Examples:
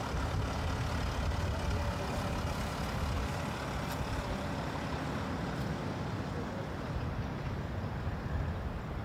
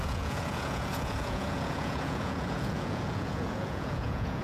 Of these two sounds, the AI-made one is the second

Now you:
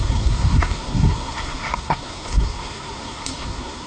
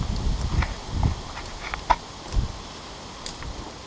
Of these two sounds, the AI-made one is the first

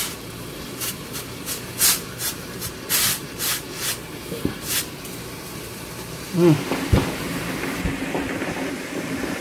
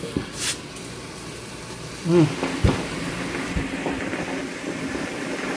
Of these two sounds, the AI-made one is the first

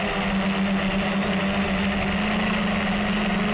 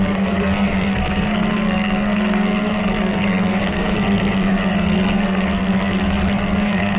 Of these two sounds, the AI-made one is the second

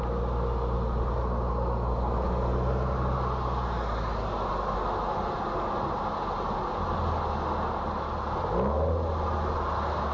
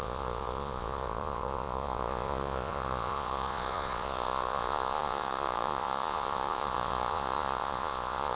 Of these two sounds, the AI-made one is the second